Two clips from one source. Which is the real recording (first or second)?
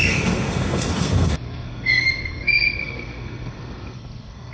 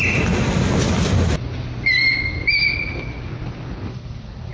second